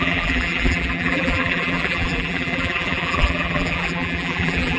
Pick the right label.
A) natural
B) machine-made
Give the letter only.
B